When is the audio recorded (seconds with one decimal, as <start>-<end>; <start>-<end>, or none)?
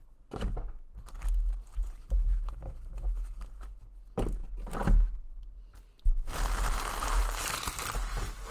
0.0-1.7; 2.9-8.5